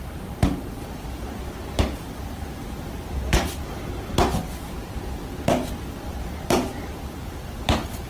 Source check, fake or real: real